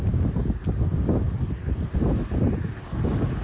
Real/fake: real